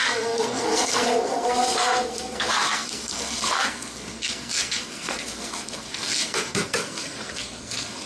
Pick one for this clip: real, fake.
fake